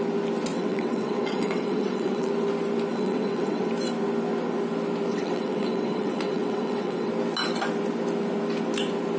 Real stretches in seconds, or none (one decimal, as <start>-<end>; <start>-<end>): 0.0-0.5; 2.3-2.9; 3.7-5.1; 7.1-9.2